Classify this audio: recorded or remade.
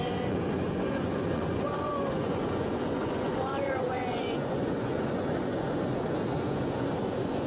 remade